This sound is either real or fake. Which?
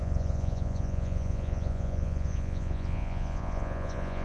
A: fake